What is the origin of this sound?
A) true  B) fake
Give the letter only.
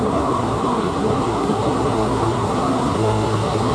B